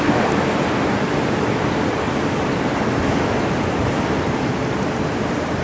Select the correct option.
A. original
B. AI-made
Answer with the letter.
A